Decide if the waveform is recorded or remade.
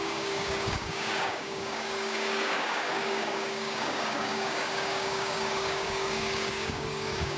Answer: remade